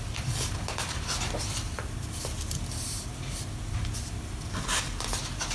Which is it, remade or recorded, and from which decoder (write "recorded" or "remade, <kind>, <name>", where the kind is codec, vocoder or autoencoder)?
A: recorded